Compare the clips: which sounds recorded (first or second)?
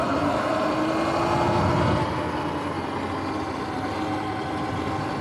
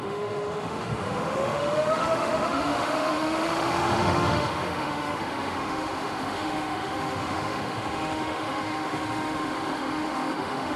first